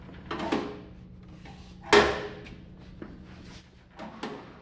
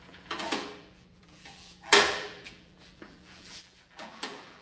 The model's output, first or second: second